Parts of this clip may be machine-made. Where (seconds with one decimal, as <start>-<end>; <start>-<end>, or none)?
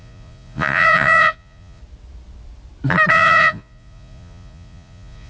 0.0-1.8; 3.1-5.3